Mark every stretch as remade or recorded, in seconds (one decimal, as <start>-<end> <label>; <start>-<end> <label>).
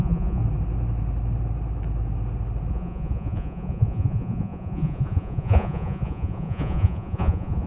0.0-0.4 remade; 0.4-2.7 recorded; 2.7-7.7 remade